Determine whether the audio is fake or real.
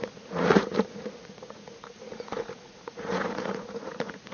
fake